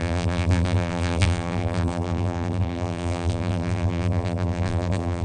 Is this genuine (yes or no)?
no